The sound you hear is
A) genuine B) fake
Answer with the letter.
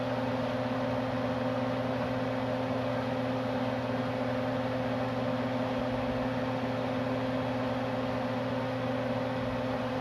A